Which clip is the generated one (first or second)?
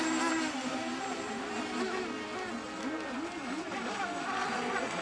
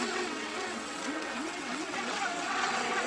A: second